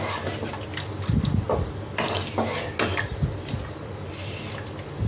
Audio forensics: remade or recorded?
recorded